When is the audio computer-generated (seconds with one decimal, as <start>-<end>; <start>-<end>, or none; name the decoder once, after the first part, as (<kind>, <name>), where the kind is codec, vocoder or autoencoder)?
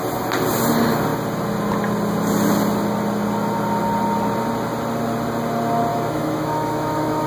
5.9-7.3 (autoencoder, DAC-VAE)